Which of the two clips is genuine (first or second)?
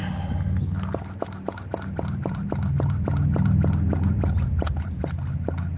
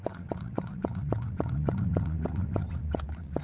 first